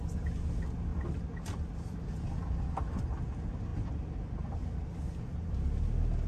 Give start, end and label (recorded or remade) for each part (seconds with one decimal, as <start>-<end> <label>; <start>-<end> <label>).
0.0-6.3 recorded